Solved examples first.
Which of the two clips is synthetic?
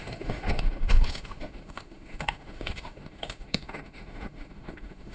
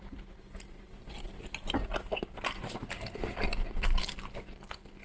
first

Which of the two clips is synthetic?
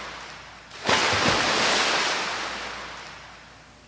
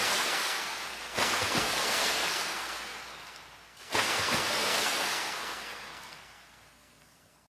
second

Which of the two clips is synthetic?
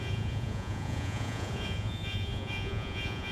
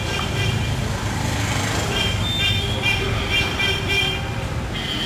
first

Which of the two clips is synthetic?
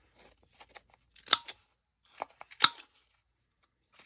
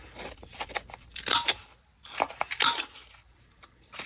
second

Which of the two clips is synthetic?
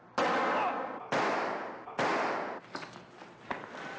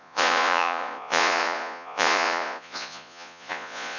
second